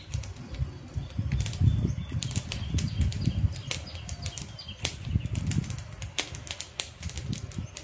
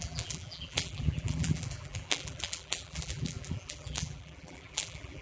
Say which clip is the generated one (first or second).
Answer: second